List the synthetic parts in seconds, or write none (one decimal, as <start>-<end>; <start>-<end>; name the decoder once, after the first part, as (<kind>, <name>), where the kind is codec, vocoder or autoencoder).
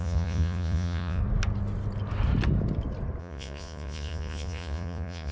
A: 0.0-1.2 (vocoder, Vocos); 3.2-5.3